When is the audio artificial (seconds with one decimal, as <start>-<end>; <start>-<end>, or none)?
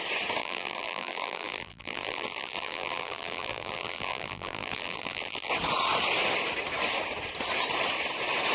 0.4-5.5